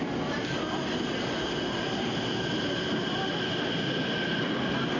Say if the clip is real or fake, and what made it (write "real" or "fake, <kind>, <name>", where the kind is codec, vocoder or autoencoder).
real